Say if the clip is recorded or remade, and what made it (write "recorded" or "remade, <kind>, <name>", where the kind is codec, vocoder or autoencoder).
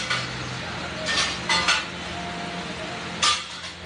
recorded